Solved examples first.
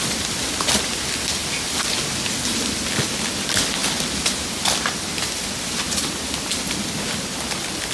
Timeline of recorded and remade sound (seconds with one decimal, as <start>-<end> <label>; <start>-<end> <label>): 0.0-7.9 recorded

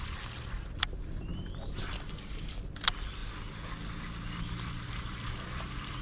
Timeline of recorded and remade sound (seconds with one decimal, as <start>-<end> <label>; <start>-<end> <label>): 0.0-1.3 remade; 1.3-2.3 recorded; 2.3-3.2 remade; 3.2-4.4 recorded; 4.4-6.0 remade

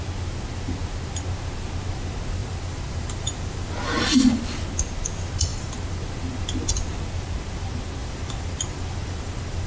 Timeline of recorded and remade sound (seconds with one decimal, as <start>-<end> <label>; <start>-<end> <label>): 0.0-2.4 recorded; 2.4-4.4 remade; 4.4-5.5 recorded; 5.5-6.0 remade; 6.0-8.0 recorded; 8.0-9.7 remade

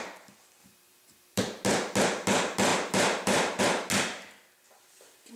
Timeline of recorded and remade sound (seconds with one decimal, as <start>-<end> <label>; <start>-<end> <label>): 0.0-0.6 recorded; 0.6-1.4 remade; 1.4-2.7 recorded; 2.7-3.6 remade; 3.6-5.4 recorded